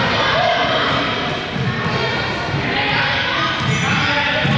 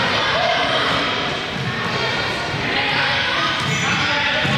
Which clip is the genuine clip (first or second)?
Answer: first